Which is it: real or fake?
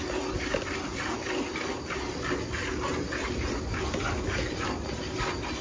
real